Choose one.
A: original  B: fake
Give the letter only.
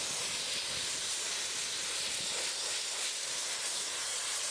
A